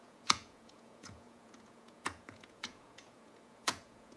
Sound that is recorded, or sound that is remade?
remade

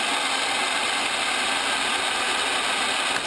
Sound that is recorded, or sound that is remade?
recorded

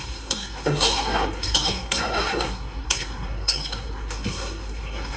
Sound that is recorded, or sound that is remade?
remade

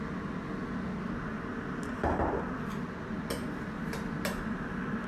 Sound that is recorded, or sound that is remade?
recorded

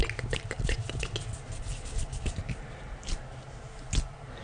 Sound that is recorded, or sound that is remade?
recorded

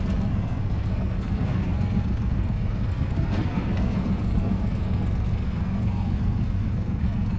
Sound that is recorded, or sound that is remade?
remade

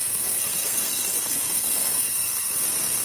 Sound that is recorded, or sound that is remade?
remade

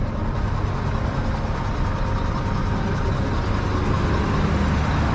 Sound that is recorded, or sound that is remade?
recorded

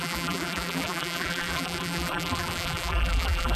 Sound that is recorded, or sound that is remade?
remade